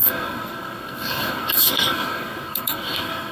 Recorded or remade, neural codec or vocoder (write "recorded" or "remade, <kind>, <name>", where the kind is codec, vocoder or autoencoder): remade, codec, SNAC